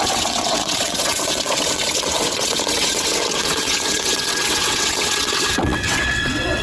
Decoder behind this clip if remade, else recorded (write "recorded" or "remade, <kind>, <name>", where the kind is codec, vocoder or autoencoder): remade, vocoder, WaveNeXt